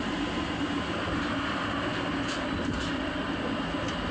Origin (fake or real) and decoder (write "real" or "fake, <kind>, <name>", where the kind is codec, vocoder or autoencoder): real